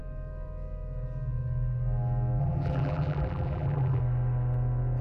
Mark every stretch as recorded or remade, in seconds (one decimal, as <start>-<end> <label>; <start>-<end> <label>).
0.0-2.4 recorded; 2.4-4.0 remade; 4.0-5.0 recorded